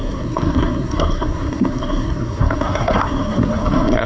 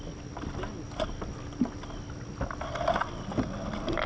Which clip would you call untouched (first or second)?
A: second